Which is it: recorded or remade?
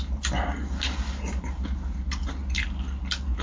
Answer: recorded